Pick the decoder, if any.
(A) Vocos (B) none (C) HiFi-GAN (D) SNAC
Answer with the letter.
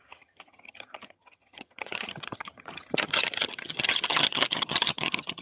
C